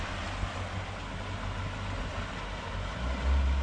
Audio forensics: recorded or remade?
recorded